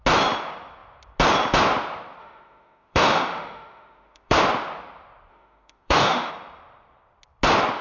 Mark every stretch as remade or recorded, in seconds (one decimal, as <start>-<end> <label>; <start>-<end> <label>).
0.0-2.2 recorded; 2.2-4.4 remade; 4.4-5.3 recorded; 5.3-6.3 remade; 6.3-7.8 recorded